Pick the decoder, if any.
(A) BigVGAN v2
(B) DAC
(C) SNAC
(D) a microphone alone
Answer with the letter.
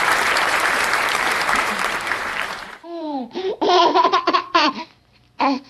A